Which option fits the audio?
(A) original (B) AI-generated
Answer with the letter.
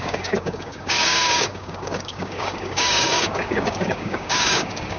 B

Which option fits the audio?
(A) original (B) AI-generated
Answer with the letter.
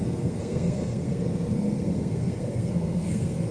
B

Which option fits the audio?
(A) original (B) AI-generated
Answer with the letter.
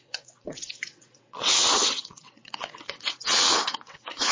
B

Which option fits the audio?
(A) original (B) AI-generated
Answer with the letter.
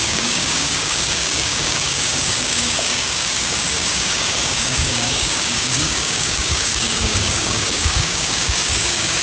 B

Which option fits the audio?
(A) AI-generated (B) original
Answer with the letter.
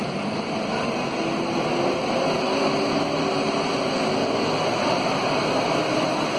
B